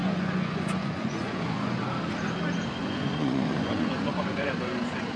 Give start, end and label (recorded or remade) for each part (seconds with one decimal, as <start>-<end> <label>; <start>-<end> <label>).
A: 0.0-1.8 remade; 1.8-2.8 recorded; 2.8-4.5 remade; 4.5-5.2 recorded